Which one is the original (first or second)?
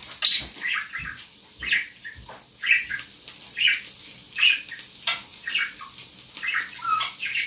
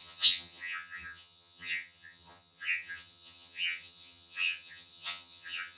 first